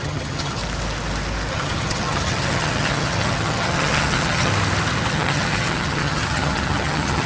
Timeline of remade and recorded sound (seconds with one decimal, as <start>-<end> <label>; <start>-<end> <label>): 0.0-0.6 remade; 0.6-1.5 recorded; 1.5-4.5 remade; 4.5-5.1 recorded; 5.1-7.3 remade